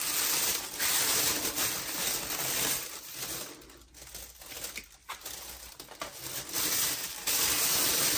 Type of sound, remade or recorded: recorded